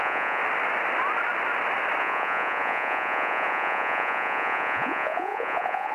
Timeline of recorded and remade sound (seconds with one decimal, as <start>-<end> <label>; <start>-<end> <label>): 0.0-0.4 remade; 0.4-2.0 recorded; 2.0-5.9 remade